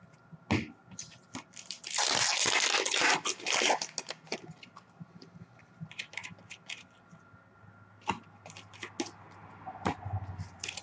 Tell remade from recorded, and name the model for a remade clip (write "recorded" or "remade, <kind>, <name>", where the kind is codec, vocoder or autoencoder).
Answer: recorded